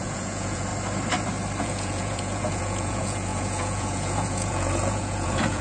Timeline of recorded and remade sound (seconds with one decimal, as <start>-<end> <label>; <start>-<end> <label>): 0.0-0.7 remade; 0.7-1.6 recorded; 1.6-5.6 remade